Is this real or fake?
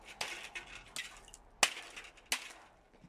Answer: real